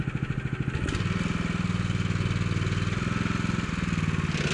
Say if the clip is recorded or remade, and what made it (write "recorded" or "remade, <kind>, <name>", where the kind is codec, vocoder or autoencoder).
recorded